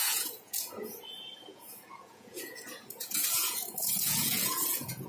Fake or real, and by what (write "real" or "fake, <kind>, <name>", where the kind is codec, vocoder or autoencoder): fake, vocoder, Vocos